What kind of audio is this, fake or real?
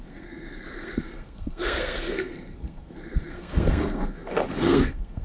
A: fake